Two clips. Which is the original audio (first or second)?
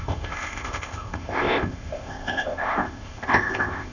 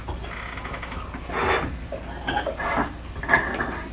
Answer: second